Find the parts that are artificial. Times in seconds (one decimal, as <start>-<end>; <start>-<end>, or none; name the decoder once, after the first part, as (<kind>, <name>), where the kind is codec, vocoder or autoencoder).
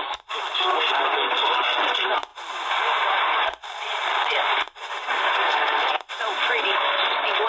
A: none